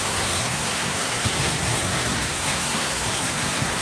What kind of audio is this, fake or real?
fake